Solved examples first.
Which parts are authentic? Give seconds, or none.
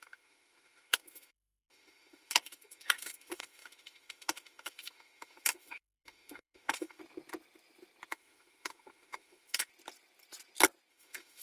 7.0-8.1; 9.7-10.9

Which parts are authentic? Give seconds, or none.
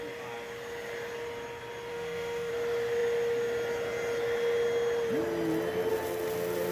0.0-1.9; 2.5-6.7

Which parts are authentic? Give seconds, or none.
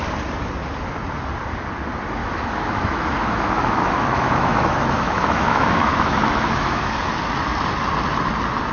0.0-2.2; 6.9-8.7